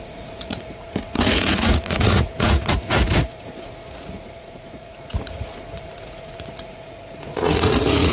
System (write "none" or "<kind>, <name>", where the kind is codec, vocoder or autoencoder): vocoder, Vocos